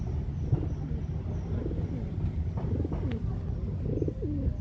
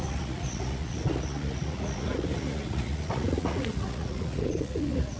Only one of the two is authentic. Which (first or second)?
first